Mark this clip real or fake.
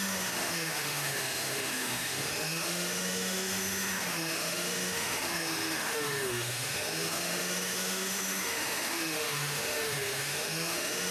fake